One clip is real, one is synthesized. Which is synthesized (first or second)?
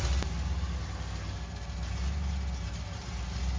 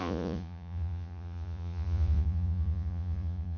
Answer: second